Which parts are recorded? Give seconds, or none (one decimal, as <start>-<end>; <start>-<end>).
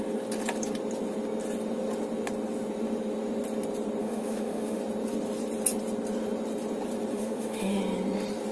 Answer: 0.0-4.0; 4.8-7.1; 7.8-8.5